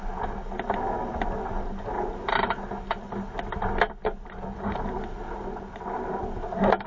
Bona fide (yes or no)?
yes